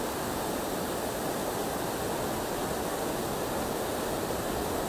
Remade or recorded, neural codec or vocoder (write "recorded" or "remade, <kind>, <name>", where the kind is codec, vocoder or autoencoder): recorded